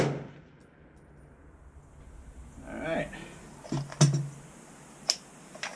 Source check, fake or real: real